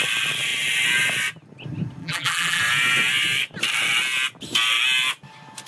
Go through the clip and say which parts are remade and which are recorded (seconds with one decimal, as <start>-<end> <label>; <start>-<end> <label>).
0.0-2.0 recorded; 2.0-2.6 remade; 2.6-5.7 recorded